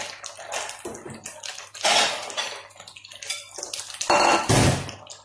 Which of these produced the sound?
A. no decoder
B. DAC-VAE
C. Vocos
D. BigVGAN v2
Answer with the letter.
A